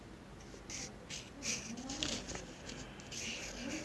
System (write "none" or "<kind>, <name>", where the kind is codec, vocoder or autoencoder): none